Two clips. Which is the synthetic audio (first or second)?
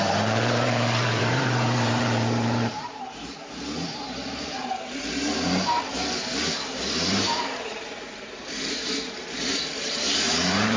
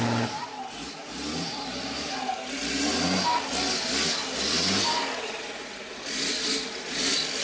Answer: first